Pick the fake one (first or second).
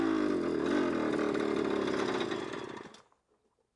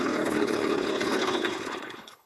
second